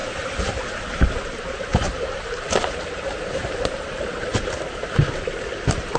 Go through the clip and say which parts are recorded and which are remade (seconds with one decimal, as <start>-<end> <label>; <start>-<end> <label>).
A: 0.0-1.7 recorded; 1.7-4.3 remade; 4.3-6.0 recorded